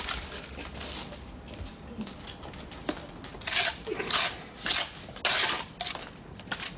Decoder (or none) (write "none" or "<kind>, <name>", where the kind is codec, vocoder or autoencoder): none